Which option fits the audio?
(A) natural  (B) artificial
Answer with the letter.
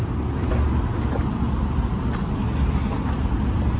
A